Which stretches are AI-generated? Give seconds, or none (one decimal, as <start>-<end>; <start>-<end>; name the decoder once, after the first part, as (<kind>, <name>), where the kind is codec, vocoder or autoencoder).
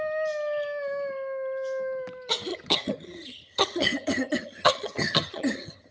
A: 2.5-5.9 (vocoder, HiFi-GAN)